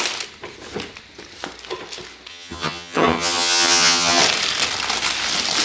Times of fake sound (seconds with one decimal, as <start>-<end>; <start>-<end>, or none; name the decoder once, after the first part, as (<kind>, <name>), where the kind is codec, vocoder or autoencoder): 2.3-4.2 (vocoder, HiFi-GAN)